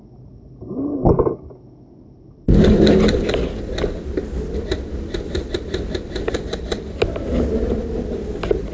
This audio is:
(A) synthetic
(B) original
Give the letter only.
B